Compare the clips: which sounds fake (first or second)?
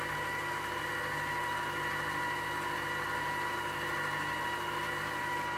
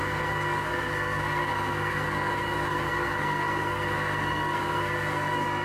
second